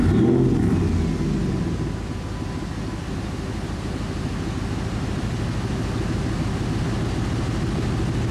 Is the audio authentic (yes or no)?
yes